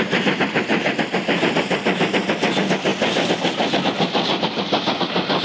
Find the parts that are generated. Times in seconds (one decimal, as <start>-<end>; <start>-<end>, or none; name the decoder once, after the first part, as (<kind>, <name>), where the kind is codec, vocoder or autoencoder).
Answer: none